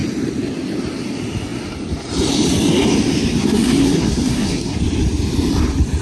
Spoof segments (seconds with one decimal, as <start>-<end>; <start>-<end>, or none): 3.4-4.8